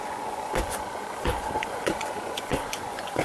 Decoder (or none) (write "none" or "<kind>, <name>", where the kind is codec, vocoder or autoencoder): vocoder, Vocos